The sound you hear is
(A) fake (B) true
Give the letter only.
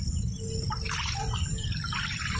B